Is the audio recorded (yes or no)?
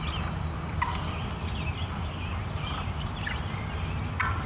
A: yes